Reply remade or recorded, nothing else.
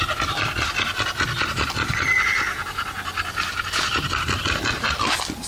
remade